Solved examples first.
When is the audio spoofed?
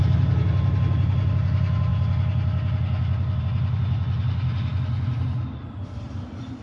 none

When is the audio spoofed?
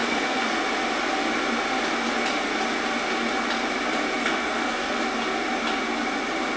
0.0-0.6 (codec, SNAC); 4.2-5.0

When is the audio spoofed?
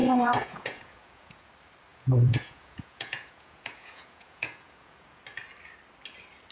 0.0-1.5 (vocoder, Vocos); 1.9-5.2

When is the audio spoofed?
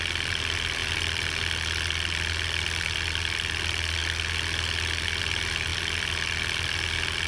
0.0-7.3 (vocoder, BigVGAN v2)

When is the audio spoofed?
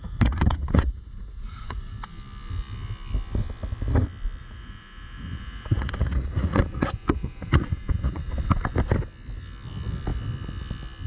0.0-1.8 (vocoder, Vocos); 4.4-8.3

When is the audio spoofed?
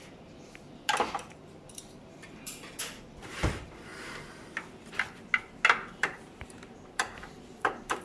0.0-2.7 (vocoder, BigVGAN v2); 3.2-3.9; 5.9-8.0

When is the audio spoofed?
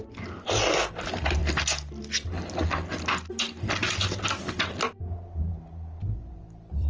0.0-1.4 (vocoder, BigVGAN v2); 5.5-6.9